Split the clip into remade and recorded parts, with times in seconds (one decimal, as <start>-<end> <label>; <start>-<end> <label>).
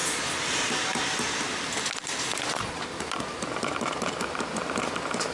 0.0-5.3 recorded